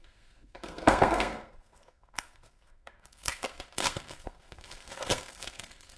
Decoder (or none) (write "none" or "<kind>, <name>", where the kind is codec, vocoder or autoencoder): codec, SNAC